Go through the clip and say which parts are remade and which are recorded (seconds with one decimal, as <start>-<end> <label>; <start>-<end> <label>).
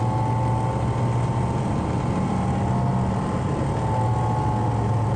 0.0-5.2 recorded